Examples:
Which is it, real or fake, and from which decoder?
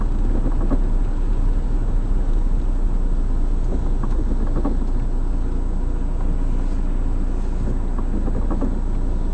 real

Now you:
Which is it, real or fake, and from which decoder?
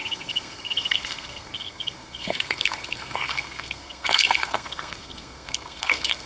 fake, codec, SNAC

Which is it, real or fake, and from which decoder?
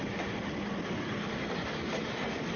real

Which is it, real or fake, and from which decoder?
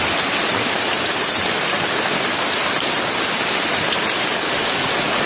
real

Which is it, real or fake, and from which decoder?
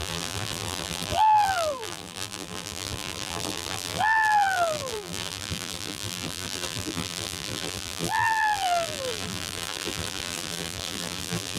fake, vocoder, BigVGAN v2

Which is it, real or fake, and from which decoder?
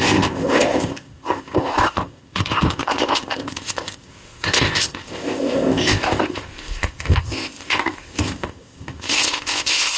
fake, codec, ZipCodec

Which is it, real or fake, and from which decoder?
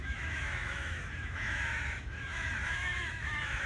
fake, autoencoder, DAC-VAE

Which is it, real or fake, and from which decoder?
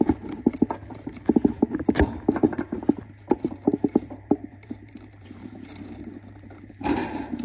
fake, vocoder, BigVGAN v2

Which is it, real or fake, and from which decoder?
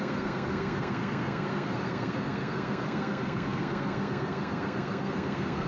fake, codec, SNAC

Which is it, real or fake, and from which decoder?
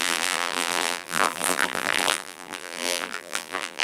fake, vocoder, BigVGAN v2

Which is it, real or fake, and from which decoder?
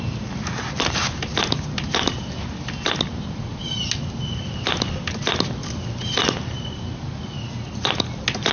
real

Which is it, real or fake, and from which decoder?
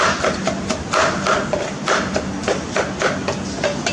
real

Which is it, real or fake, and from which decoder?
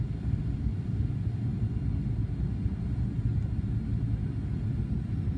real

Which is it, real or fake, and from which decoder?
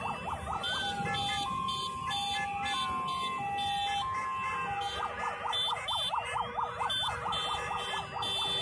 real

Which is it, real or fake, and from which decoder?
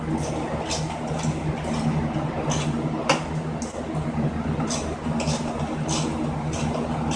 real